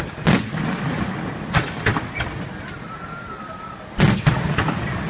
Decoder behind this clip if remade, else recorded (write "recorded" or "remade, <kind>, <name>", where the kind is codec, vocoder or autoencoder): recorded